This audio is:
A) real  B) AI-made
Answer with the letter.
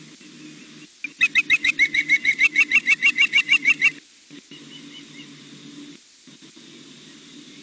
A